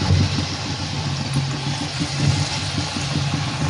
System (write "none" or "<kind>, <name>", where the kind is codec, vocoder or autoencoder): none